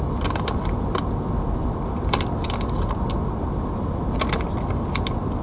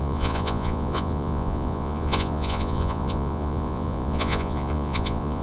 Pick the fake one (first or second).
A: second